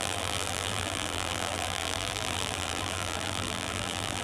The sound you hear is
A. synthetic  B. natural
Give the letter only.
A